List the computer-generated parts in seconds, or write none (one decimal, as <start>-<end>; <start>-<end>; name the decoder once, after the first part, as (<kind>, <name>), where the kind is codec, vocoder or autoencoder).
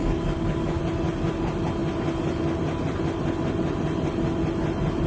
0.0-0.8 (codec, DAC)